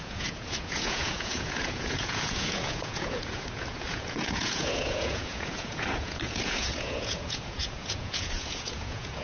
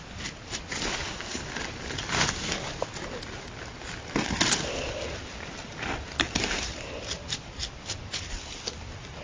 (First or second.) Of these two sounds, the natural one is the second